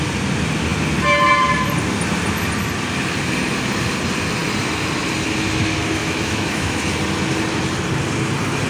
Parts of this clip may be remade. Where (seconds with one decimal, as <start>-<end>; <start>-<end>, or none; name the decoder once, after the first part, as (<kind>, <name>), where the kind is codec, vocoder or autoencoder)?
6.0-6.8 (autoencoder, DAC-VAE)